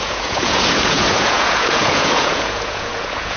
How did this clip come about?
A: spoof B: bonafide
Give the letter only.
A